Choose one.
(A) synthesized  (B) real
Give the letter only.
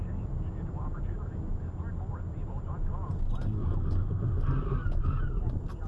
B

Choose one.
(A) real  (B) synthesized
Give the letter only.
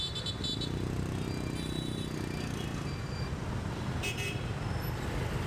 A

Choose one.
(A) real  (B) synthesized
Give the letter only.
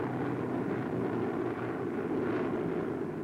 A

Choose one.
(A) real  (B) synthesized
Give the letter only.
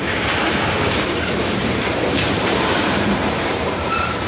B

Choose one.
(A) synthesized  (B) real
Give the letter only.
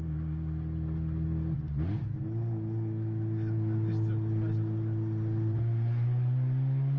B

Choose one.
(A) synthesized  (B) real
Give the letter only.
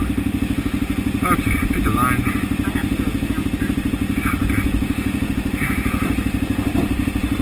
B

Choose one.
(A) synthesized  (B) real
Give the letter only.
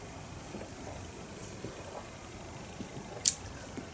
A